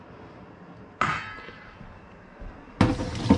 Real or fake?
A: real